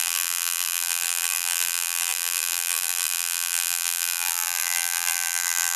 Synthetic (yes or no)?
yes